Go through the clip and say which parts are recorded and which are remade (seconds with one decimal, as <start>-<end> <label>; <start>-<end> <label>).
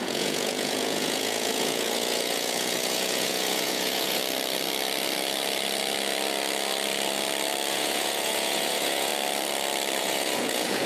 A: 0.0-4.2 remade; 4.2-7.7 recorded; 7.7-9.1 remade; 9.1-10.0 recorded; 10.0-10.9 remade